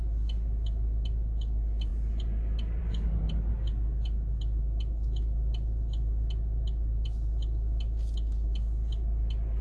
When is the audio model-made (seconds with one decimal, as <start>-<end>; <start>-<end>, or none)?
none